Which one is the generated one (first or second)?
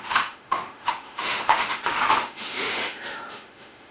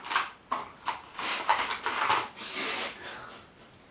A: first